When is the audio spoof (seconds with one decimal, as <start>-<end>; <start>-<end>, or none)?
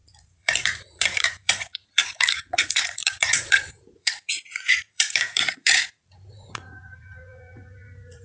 0.0-8.2